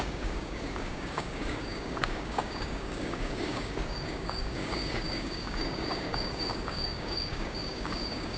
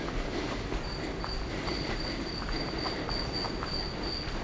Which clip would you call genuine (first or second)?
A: second